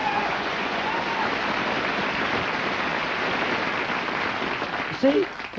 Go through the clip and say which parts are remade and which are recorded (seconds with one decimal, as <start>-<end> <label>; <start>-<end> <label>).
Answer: 0.0-0.9 remade; 0.9-5.6 recorded